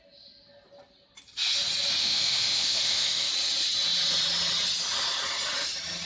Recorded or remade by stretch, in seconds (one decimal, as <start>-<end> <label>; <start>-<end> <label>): 0.0-2.0 recorded; 2.0-3.3 remade; 3.3-6.1 recorded